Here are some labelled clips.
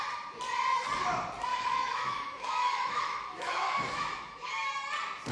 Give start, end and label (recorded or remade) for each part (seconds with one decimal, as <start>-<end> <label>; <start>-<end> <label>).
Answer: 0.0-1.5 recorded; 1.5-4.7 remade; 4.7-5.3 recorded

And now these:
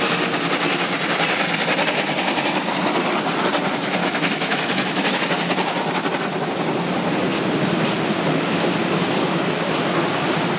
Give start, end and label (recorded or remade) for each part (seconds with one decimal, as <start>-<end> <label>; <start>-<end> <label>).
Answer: 0.0-4.0 recorded; 4.0-5.2 remade; 5.2-10.6 recorded

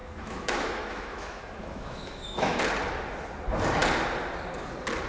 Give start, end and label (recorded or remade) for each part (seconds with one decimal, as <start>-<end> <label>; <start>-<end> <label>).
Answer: 0.0-2.6 remade; 2.6-5.1 recorded

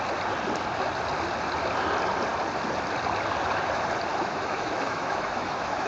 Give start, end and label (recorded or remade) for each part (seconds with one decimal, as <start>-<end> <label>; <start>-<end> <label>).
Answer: 0.0-4.1 recorded; 4.1-5.9 remade

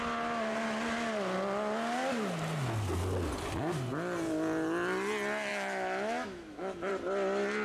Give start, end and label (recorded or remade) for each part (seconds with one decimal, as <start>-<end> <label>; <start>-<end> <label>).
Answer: 0.0-5.5 recorded; 5.5-6.9 remade; 6.9-7.6 recorded